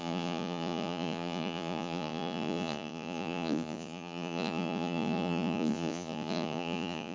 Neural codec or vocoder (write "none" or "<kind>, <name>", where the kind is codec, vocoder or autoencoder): vocoder, Vocos